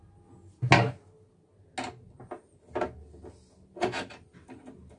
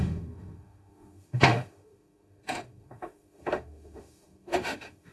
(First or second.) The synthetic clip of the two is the second